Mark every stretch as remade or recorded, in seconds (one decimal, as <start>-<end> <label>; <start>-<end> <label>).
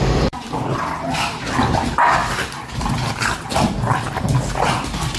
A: 0.0-2.2 remade; 2.2-4.7 recorded; 4.7-5.2 remade